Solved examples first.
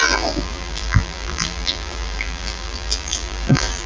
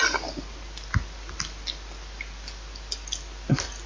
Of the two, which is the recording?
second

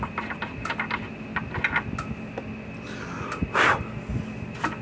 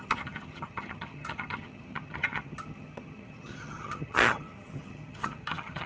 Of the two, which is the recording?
first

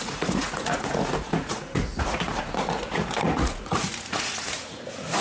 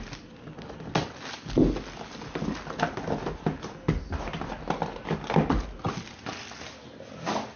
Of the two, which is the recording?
second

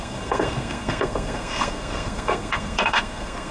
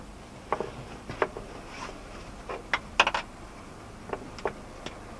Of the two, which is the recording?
second